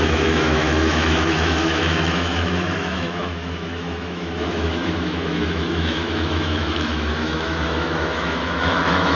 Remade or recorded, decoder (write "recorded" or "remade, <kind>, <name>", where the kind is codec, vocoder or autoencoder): remade, autoencoder, DAC-VAE